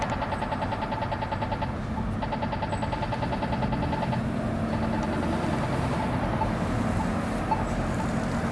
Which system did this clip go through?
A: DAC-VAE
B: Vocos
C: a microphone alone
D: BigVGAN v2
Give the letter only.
C